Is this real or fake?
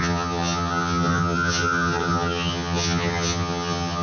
fake